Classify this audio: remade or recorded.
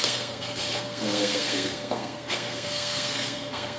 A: remade